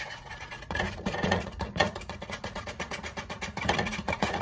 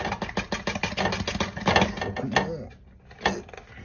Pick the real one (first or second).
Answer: second